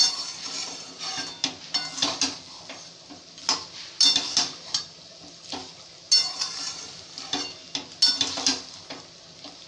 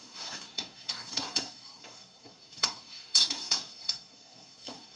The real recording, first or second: first